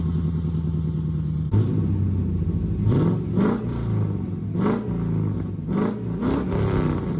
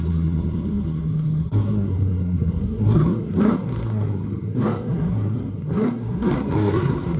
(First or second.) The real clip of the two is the first